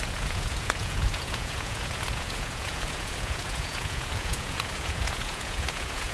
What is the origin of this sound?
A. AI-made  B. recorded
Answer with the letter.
A